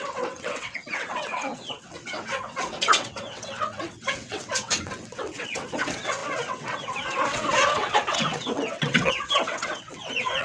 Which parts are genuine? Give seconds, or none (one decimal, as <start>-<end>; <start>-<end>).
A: none